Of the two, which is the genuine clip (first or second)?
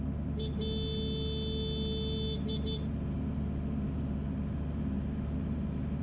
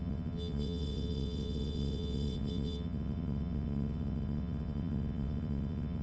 first